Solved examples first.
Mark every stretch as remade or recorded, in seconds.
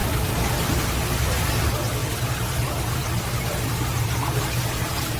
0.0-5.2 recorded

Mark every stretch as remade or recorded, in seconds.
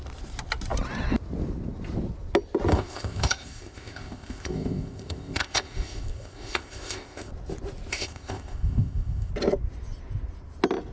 0.0-2.7 recorded; 2.7-7.3 remade; 7.3-7.9 recorded; 7.9-9.3 remade; 9.3-10.9 recorded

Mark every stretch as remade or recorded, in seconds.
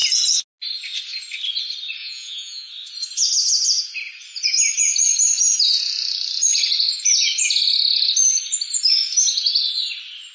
0.0-2.0 recorded; 2.0-2.7 remade; 2.7-10.3 recorded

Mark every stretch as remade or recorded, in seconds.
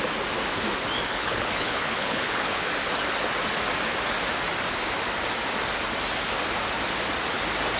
0.0-1.1 recorded; 1.1-2.7 remade; 2.7-7.8 recorded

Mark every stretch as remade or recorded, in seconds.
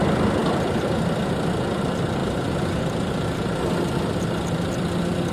0.0-5.3 recorded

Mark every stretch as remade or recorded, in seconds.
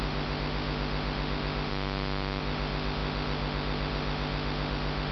0.0-1.7 remade; 1.7-2.4 recorded; 2.4-5.1 remade